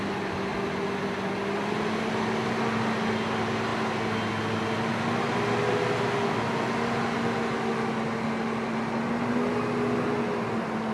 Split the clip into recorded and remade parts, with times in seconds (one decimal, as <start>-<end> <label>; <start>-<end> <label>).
0.0-10.9 recorded